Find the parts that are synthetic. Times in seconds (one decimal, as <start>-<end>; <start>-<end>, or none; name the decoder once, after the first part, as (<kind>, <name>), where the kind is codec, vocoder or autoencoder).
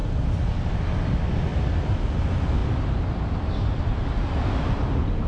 1.5-2.2 (vocoder, BigVGAN v2)